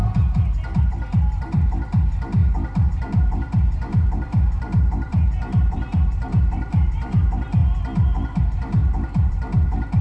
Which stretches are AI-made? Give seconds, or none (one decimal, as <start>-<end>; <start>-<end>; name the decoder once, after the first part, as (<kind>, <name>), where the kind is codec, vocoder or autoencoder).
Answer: 0.8-2.4 (vocoder, BigVGAN v2); 2.9-7.6; 8.4-10.0